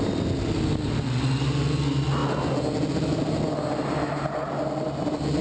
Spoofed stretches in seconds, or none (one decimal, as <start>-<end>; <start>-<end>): none